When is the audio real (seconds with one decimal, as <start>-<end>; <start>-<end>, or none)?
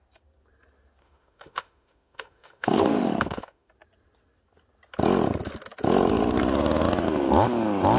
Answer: 0.0-1.0; 3.7-8.0